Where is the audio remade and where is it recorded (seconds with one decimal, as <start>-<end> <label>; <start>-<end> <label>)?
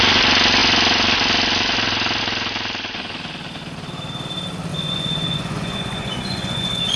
0.0-4.7 recorded; 4.7-7.0 remade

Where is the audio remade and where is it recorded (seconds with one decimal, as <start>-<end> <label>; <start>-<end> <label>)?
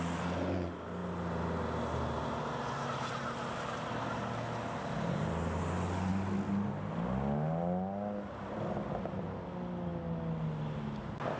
0.0-11.4 recorded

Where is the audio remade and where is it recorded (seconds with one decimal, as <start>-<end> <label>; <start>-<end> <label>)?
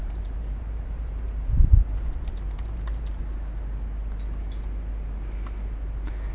0.0-3.2 remade; 3.2-6.3 recorded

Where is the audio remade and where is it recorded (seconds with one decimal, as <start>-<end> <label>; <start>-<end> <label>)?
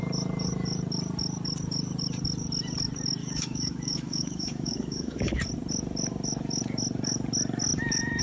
0.0-3.2 recorded; 3.2-5.4 remade; 5.4-8.2 recorded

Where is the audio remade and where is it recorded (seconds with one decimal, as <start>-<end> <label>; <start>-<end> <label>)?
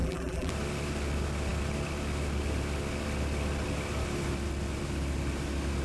0.0-0.5 remade; 0.5-5.8 recorded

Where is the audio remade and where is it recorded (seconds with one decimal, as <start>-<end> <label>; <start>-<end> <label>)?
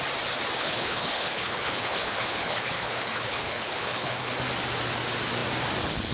0.0-0.6 recorded; 0.6-4.3 remade; 4.3-6.1 recorded